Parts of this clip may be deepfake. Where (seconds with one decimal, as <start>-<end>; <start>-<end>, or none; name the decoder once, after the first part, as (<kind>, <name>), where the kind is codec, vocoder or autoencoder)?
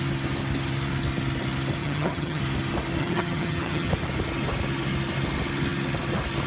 1.8-2.4 (vocoder, HiFi-GAN); 3.0-3.9